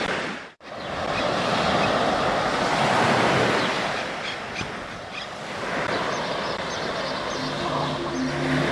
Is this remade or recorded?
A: recorded